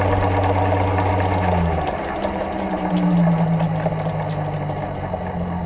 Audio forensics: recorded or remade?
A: recorded